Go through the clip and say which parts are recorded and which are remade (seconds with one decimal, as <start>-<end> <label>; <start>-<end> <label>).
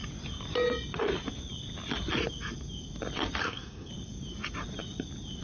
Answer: 0.0-3.4 recorded; 3.4-3.9 remade; 3.9-5.4 recorded